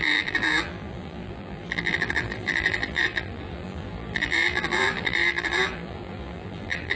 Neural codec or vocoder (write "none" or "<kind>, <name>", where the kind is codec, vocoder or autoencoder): vocoder, BigVGAN v2